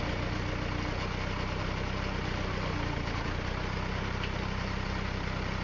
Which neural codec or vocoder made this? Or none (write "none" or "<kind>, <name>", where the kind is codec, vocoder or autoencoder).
none